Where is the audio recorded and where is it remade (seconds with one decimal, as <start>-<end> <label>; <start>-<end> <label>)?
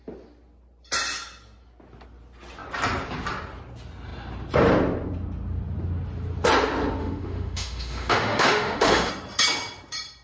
0.0-7.0 recorded; 7.0-9.1 remade; 9.1-10.2 recorded